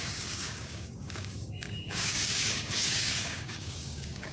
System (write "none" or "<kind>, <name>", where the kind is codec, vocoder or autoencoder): codec, DAC